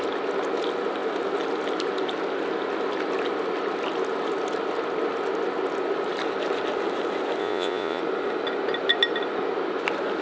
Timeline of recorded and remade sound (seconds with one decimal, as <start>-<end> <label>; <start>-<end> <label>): 0.0-7.4 recorded; 7.4-8.0 remade; 8.0-10.2 recorded